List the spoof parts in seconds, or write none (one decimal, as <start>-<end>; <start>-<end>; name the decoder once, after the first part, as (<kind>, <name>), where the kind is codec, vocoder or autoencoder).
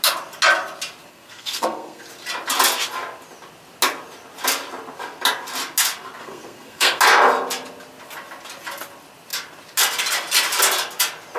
1.1-2.0 (codec, SNAC); 6.2-7.0